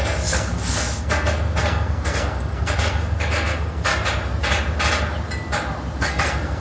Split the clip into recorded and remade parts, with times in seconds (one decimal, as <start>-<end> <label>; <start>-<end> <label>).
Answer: 0.0-3.9 remade; 3.9-6.0 recorded; 6.0-6.6 remade